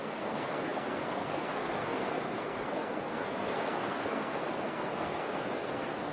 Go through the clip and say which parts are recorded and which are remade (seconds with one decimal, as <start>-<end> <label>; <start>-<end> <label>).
0.0-6.1 remade

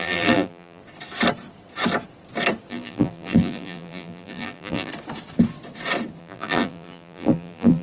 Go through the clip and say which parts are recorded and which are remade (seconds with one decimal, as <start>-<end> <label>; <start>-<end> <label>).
0.0-0.8 remade; 0.8-2.7 recorded; 2.7-4.9 remade; 4.9-6.2 recorded; 6.2-7.8 remade

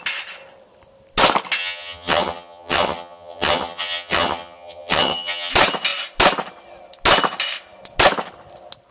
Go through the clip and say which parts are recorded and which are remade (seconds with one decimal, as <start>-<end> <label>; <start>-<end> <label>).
0.0-1.6 recorded; 1.6-5.5 remade; 5.5-8.9 recorded

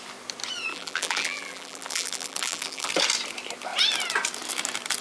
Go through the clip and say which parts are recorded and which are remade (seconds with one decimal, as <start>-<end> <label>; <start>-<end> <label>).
0.0-0.7 recorded; 0.7-2.9 remade; 2.9-5.0 recorded

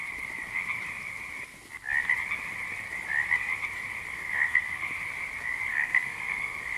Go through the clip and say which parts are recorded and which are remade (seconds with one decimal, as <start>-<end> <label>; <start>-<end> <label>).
0.0-4.2 recorded; 4.2-4.9 remade; 4.9-5.7 recorded; 5.7-6.8 remade

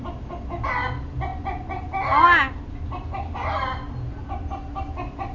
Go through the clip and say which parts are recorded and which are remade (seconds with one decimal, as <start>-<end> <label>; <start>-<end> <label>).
0.0-5.3 recorded

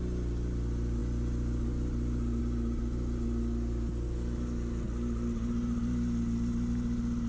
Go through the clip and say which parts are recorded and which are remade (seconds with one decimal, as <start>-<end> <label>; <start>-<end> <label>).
0.0-7.3 recorded

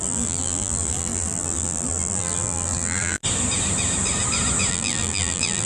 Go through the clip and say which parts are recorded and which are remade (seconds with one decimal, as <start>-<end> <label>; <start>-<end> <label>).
0.0-3.2 remade; 3.2-4.7 recorded; 4.7-5.7 remade